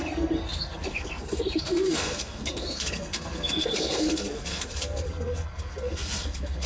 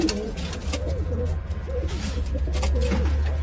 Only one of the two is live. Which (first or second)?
second